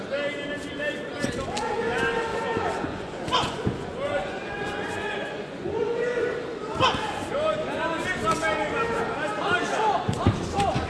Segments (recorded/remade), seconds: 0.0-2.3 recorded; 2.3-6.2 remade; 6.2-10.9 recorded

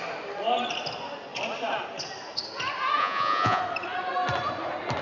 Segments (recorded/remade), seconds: 0.0-3.0 recorded; 3.0-3.6 remade; 3.6-5.0 recorded

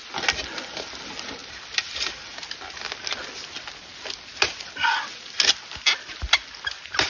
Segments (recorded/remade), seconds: 0.0-7.1 recorded

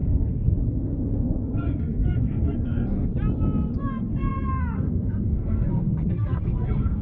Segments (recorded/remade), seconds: 0.0-3.1 remade; 3.1-3.8 recorded; 3.8-7.0 remade